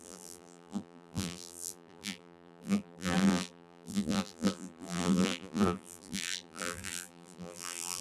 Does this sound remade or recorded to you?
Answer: remade